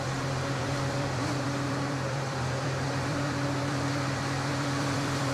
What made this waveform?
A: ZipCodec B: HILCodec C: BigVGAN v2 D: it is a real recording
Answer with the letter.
C